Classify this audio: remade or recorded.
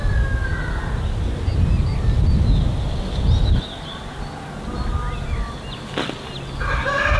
recorded